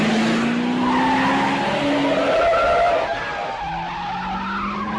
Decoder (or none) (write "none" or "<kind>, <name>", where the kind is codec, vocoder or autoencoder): none